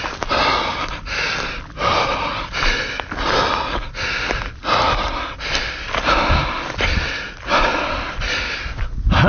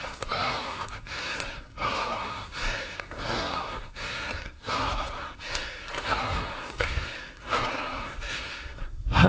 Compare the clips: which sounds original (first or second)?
first